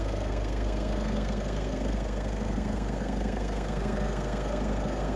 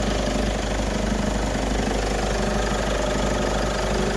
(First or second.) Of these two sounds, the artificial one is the first